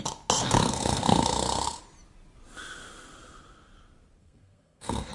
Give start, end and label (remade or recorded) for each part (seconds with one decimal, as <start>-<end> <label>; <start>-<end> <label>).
0.0-0.4 recorded; 0.4-1.8 remade; 1.8-4.2 recorded; 4.2-5.1 remade